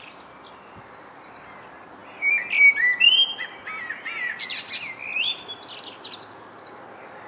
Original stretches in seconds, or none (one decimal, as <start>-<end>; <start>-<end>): 0.0-7.3